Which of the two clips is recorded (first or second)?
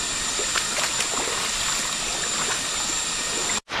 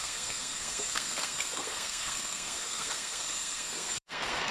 first